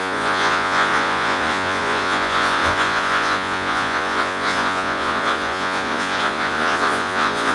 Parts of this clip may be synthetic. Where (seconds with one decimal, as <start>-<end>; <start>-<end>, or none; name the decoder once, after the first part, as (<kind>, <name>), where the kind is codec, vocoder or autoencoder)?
0.0-7.5 (vocoder, Vocos)